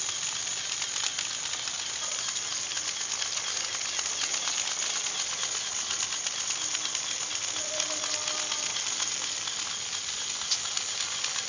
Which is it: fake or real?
real